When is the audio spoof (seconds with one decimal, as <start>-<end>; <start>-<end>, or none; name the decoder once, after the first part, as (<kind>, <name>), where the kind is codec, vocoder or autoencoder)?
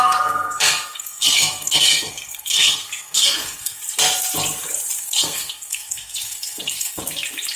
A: 0.0-3.8 (codec, SNAC); 5.0-7.0